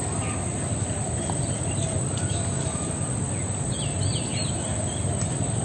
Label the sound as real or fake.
fake